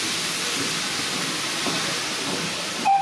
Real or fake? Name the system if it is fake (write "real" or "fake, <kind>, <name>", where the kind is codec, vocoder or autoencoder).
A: real